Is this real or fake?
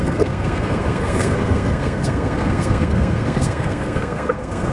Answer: fake